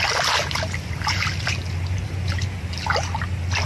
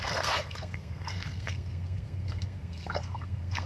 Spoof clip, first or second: second